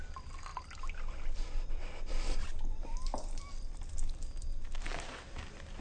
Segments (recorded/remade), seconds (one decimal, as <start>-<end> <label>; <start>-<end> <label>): 0.0-5.8 recorded